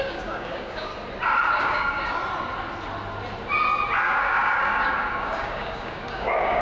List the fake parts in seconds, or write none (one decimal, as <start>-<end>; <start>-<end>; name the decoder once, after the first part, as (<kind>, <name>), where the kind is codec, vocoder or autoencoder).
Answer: 0.0-0.9 (codec, DAC); 1.6-2.2; 4.0-6.6